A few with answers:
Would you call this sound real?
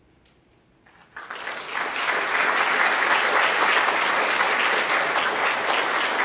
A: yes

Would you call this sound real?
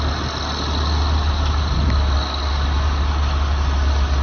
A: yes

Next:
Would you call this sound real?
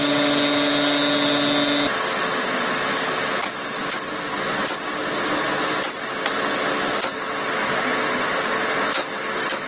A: yes